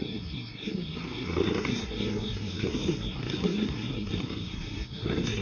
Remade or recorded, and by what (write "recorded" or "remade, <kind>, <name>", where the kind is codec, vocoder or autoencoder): remade, codec, SNAC